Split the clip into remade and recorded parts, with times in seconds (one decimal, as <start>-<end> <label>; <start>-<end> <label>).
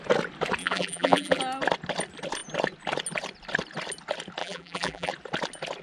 0.0-0.6 recorded; 0.6-1.4 remade; 1.4-4.4 recorded; 4.4-5.1 remade; 5.1-5.8 recorded